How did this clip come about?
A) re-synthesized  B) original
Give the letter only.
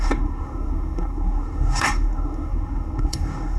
A